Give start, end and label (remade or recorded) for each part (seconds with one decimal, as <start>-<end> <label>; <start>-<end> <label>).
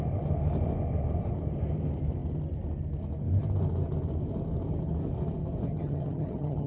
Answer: 0.0-5.7 recorded; 5.7-6.7 remade